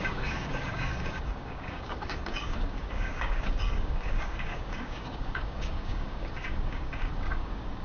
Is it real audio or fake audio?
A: fake